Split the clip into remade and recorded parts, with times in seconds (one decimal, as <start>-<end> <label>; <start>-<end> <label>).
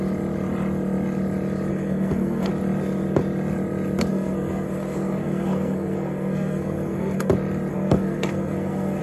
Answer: 0.0-1.7 recorded; 1.7-2.5 remade; 2.5-4.1 recorded; 4.1-7.3 remade; 7.3-7.7 recorded; 7.7-9.0 remade